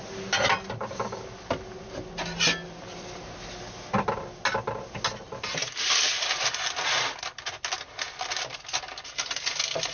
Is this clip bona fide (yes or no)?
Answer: yes